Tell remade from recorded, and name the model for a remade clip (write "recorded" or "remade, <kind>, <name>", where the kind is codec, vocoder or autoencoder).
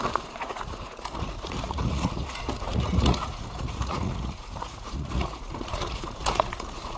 remade, vocoder, Vocos